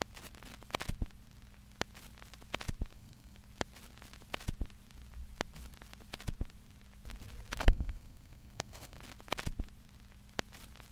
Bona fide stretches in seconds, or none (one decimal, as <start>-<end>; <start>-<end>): 0.0-2.9; 3.4-7.6; 9.0-10.9